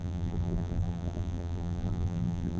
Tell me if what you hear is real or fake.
fake